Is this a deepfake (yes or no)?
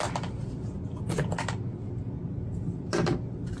no